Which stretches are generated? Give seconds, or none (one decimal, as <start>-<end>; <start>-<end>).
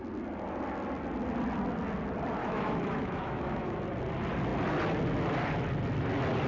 2.4-3.8